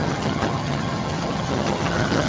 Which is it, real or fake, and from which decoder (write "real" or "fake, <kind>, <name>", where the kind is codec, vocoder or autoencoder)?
fake, vocoder, HiFi-GAN